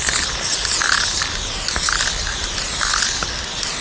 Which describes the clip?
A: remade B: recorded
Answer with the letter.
B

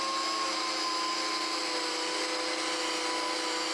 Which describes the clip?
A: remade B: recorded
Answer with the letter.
B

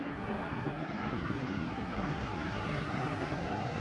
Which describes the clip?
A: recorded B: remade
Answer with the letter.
B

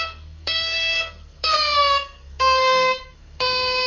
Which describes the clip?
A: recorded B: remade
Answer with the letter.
B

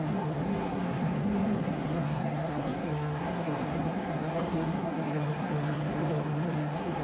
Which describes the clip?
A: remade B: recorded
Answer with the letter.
A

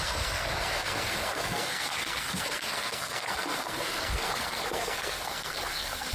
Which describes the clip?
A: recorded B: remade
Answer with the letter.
B